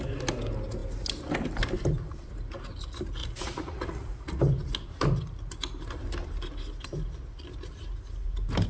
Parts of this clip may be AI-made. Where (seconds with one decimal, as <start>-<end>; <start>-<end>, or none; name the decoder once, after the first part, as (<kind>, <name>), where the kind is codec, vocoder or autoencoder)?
3.2-4.4 (vocoder, Vocos)